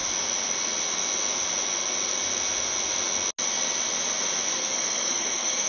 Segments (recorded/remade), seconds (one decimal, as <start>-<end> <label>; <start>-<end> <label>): 0.0-4.5 recorded; 4.5-5.7 remade